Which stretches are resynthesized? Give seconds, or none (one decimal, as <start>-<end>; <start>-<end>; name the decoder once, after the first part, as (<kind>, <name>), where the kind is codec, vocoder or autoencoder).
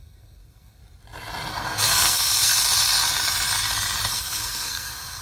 0.0-0.8 (codec, SNAC); 1.5-2.5; 4.1-5.2